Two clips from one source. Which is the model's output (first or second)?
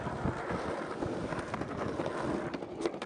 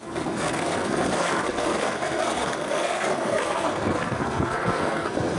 second